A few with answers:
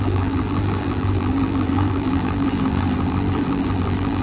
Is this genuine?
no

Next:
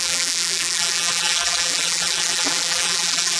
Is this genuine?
no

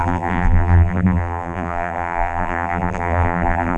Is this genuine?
no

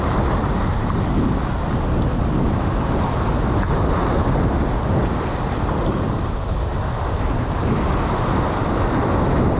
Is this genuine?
yes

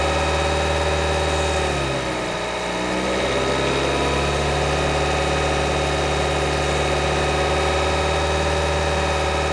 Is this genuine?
yes